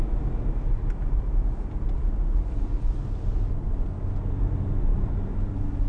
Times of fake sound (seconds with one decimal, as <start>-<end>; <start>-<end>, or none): 1.0-3.5; 4.9-5.9